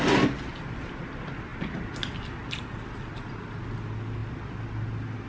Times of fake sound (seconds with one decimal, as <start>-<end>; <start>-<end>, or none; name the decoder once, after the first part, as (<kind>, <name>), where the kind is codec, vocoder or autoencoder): none